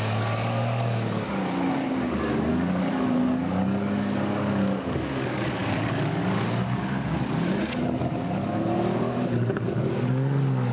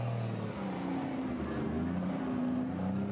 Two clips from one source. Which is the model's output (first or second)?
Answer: first